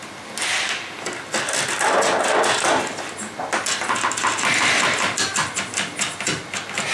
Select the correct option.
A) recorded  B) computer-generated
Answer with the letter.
A